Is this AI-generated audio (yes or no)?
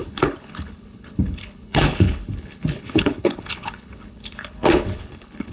yes